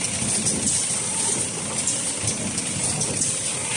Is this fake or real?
real